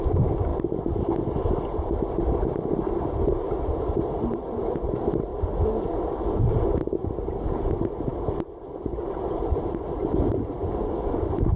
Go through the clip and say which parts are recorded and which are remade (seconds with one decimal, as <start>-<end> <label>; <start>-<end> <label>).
0.0-11.6 recorded